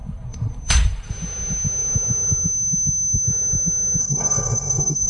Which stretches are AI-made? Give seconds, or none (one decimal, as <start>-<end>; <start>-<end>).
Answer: 0.0-1.1; 4.0-5.1